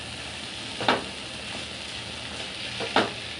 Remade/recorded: recorded